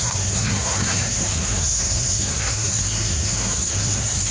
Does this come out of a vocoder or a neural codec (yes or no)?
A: yes